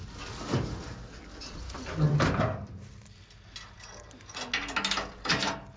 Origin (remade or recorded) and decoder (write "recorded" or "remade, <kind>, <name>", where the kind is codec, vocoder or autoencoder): recorded